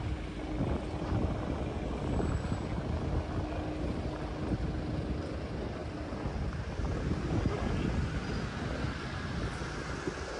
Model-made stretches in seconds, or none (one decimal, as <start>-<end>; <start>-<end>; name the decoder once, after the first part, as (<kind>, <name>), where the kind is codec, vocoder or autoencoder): none